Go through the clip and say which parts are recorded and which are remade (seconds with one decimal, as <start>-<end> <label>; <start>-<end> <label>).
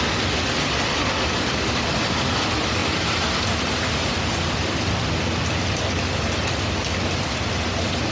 0.0-8.1 recorded